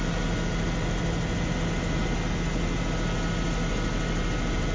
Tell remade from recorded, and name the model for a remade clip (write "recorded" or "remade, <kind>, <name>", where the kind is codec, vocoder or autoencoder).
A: recorded